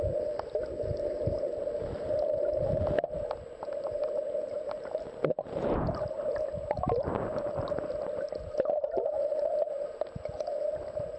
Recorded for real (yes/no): yes